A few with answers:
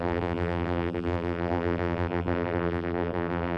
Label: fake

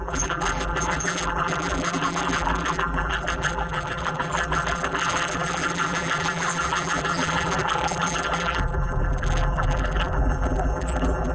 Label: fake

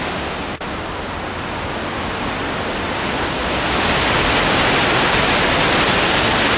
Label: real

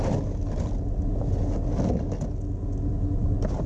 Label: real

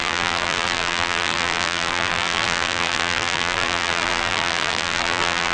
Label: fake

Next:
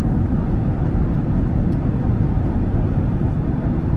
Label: fake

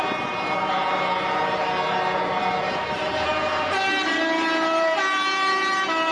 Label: fake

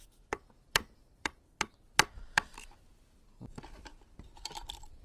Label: fake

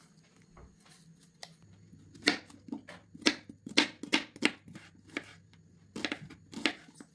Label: real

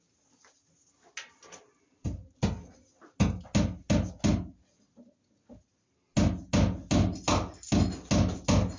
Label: real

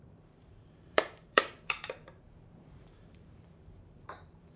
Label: fake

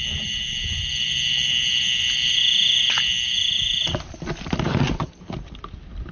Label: real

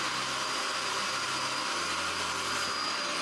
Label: real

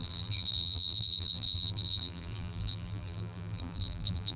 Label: fake